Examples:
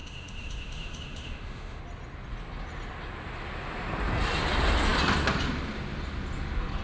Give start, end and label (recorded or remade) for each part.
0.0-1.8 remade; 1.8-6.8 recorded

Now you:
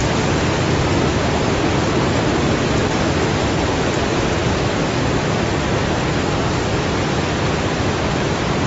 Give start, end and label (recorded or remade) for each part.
0.0-8.7 recorded

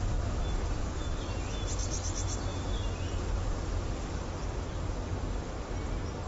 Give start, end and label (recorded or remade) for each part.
0.0-6.3 recorded